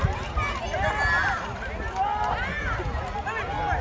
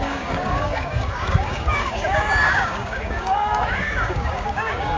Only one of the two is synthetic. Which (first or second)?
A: second